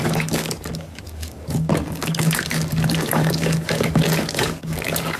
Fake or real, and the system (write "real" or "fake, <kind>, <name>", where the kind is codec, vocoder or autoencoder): fake, codec, DAC